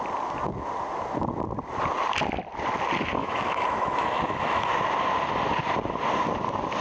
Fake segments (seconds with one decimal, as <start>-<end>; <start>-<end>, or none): 3.2-4.7